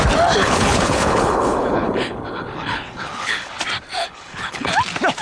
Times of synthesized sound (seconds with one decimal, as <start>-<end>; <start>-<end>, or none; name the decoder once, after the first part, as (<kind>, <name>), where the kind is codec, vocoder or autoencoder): 0.4-3.5 (codec, HILCodec); 4.0-4.7